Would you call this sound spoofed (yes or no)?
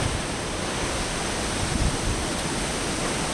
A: no